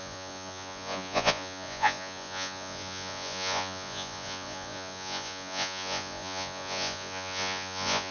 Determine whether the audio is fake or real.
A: fake